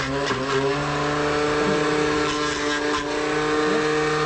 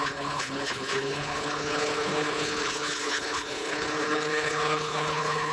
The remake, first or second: second